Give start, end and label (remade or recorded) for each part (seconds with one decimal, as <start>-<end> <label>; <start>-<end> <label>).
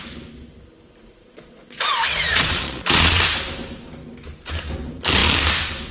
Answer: 0.0-1.2 recorded; 1.2-3.2 remade; 3.2-5.9 recorded